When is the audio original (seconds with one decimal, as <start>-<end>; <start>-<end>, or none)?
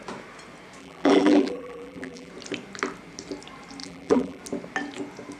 0.0-0.8; 2.3-3.8; 4.4-5.4